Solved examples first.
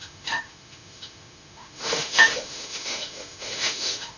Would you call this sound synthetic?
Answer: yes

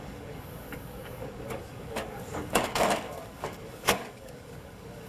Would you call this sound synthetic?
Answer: yes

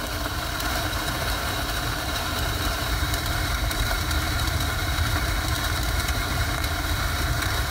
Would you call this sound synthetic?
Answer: yes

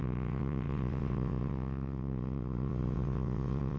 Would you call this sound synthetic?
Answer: yes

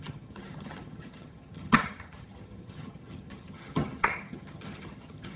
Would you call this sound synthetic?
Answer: yes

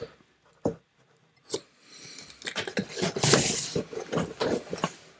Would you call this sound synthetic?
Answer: no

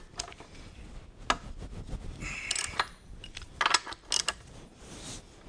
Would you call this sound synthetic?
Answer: no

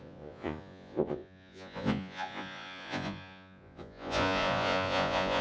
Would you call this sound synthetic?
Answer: yes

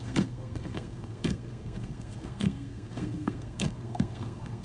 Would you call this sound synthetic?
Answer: yes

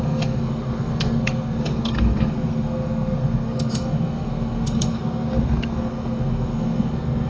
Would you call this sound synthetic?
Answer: yes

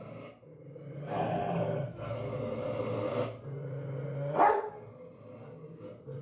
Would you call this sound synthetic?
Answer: no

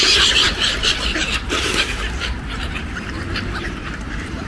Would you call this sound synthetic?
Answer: yes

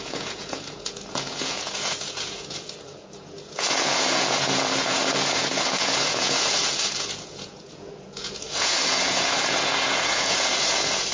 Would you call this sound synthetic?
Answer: yes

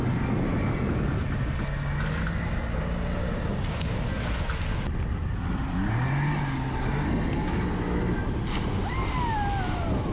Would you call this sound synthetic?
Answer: no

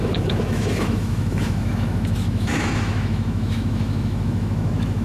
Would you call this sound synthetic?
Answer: yes